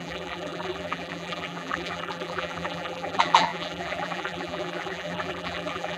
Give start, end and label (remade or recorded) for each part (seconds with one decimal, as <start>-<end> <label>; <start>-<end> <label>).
0.0-6.0 remade